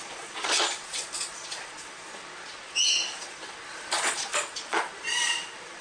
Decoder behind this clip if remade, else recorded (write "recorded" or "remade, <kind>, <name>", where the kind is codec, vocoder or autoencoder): remade, vocoder, Vocos